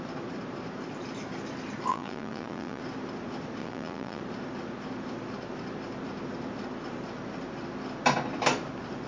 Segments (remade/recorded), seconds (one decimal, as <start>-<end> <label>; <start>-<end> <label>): 0.0-1.9 recorded; 1.9-2.8 remade; 2.8-3.6 recorded; 3.6-4.2 remade; 4.2-9.1 recorded

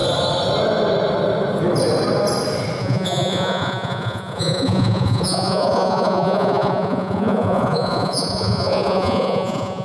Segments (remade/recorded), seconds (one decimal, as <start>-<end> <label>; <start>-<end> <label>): 0.0-2.8 recorded; 2.8-9.8 remade

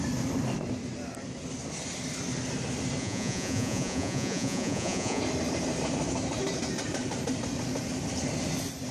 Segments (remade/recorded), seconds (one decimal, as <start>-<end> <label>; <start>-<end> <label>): 0.0-3.0 recorded; 3.0-5.2 remade; 5.2-8.9 recorded